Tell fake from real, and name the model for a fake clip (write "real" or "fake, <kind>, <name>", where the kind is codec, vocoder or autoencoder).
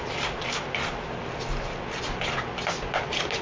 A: real